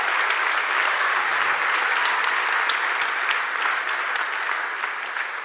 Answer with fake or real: real